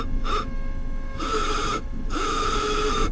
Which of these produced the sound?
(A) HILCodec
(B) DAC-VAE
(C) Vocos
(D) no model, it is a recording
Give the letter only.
B